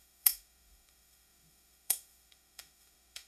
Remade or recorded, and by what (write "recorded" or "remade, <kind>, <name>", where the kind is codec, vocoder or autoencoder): remade, autoencoder, DAC-VAE